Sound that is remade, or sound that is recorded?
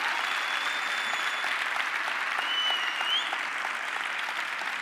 recorded